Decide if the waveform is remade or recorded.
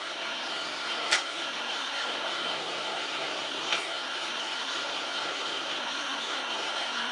remade